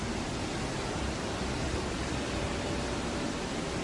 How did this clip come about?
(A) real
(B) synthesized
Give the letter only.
A